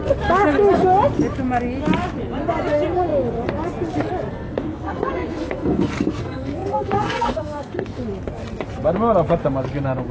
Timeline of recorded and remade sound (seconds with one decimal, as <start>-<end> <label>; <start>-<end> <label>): 0.0-4.3 recorded; 4.3-8.0 remade; 8.0-10.1 recorded